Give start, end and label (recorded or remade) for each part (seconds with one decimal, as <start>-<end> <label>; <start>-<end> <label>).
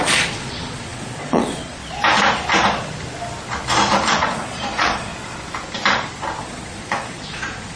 0.0-1.8 remade; 1.8-4.1 recorded; 4.1-5.1 remade; 5.1-6.4 recorded; 6.4-7.8 remade